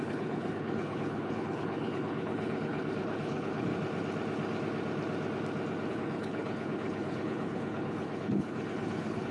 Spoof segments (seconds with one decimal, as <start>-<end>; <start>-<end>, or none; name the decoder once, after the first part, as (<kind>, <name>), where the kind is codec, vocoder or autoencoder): 0.0-3.7 (codec, HILCodec); 5.9-9.3